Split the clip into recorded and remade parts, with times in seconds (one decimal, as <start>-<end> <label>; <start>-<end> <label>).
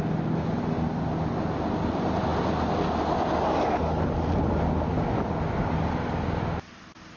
0.0-7.2 recorded